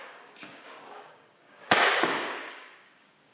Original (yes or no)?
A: no